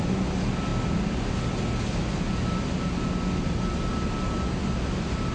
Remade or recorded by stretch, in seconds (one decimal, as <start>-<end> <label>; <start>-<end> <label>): 0.0-5.3 recorded